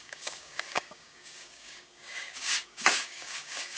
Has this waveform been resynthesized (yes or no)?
yes